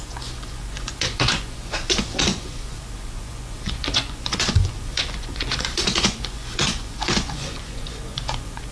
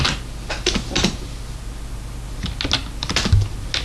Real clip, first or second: second